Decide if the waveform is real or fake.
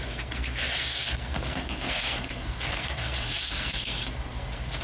fake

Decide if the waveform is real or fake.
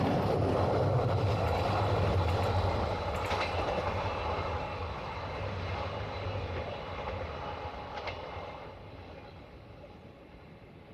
real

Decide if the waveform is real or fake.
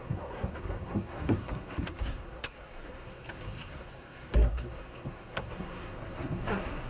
fake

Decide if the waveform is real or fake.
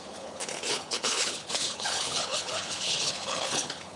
fake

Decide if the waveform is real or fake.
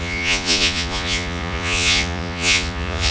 fake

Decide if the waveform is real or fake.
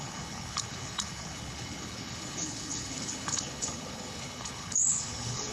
fake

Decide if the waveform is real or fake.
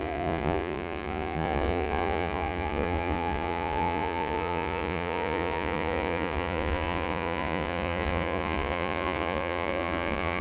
fake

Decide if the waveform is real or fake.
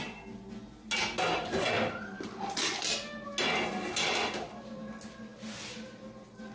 real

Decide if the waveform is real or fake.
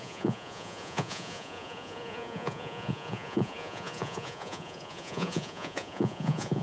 fake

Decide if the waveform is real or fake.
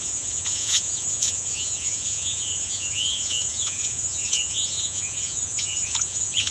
fake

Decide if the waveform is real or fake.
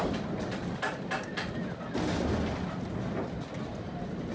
real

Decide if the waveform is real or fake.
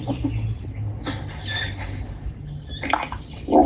real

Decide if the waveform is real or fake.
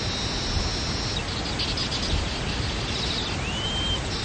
real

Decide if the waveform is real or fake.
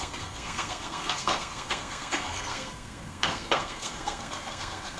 fake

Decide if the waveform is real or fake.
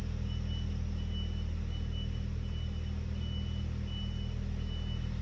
real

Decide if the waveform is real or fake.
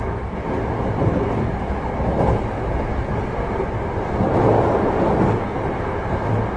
real